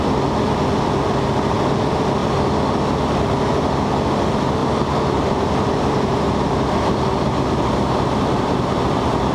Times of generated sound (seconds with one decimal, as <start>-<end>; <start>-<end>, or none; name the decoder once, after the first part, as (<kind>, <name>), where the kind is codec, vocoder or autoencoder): 4.6-6.2 (vocoder, BigVGAN v2)